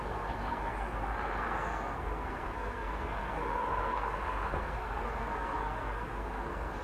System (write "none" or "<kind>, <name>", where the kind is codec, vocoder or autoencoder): codec, SNAC